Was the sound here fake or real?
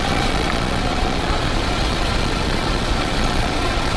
fake